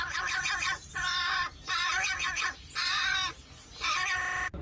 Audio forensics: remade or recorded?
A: recorded